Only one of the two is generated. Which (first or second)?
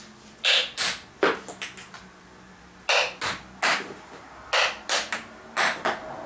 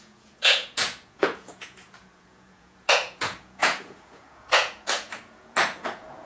second